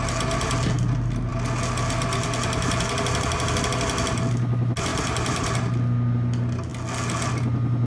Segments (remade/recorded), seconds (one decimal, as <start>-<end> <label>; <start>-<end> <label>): 0.0-4.9 recorded; 4.9-5.5 remade; 5.5-7.9 recorded